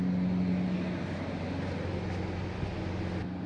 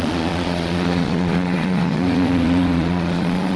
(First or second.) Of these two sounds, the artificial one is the second